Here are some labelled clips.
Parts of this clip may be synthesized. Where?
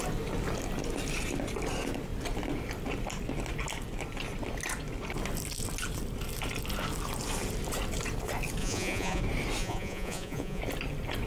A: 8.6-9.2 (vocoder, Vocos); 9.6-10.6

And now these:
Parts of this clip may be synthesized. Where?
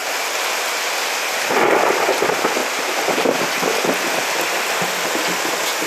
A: 2.6-3.6 (vocoder, BigVGAN v2)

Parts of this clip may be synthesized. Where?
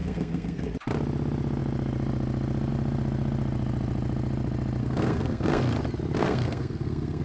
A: 0.0-0.7 (codec, SNAC); 4.8-5.6; 6.2-7.2